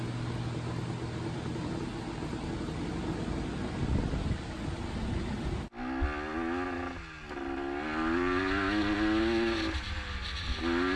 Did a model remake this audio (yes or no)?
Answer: no